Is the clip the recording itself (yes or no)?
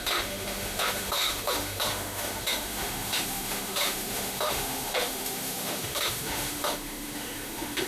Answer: no